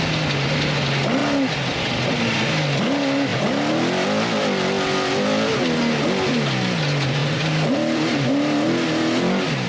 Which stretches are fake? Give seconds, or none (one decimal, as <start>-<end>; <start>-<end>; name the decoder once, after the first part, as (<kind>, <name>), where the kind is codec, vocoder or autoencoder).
3.3-3.8 (vocoder, BigVGAN v2); 7.2-8.3